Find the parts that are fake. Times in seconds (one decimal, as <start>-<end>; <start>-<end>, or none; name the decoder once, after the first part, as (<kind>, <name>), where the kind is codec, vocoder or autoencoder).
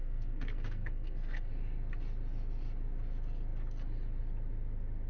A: 0.0-1.5 (codec, SNAC)